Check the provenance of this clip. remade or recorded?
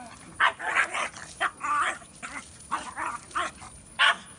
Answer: recorded